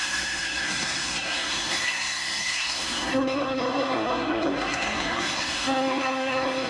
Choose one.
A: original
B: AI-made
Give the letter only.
B